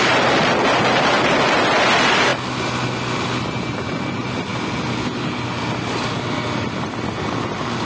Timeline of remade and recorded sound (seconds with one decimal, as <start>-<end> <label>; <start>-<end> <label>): 0.0-7.8 recorded